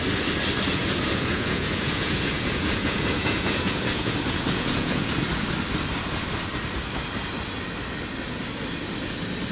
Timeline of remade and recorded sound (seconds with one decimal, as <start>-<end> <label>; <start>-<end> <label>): 0.0-0.7 recorded; 0.7-5.4 remade; 5.4-9.5 recorded